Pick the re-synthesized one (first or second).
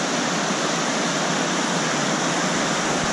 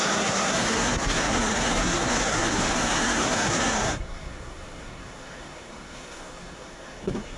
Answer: second